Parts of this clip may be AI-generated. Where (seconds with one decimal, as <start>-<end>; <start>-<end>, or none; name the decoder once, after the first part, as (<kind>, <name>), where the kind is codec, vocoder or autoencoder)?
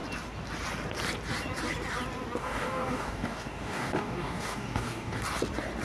2.4-5.2 (codec, DAC)